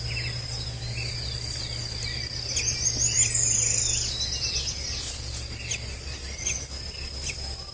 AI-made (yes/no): no